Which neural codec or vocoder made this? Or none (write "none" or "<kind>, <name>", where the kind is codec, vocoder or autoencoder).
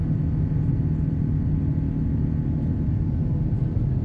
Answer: none